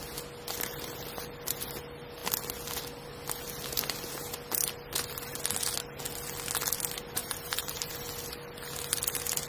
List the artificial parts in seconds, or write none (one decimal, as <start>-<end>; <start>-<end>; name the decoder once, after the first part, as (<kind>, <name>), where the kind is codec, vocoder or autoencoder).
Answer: 7.2-7.9 (vocoder, BigVGAN v2)